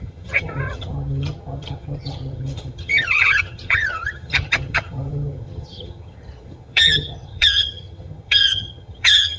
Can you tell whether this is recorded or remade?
remade